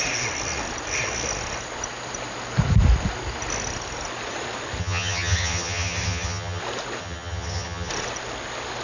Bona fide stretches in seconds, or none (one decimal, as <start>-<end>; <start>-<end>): 0.0-4.8; 6.6-7.0; 7.9-8.8